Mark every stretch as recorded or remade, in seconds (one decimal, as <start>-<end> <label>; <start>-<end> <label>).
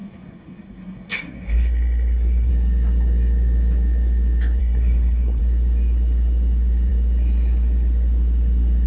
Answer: 0.0-2.5 remade; 2.5-4.6 recorded; 4.6-5.4 remade; 5.4-8.9 recorded